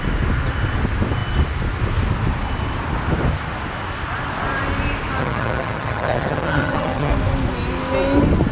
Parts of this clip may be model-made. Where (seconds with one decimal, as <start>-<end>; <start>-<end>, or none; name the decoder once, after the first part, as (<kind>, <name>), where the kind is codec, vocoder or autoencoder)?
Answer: 5.2-7.1 (vocoder, HiFi-GAN)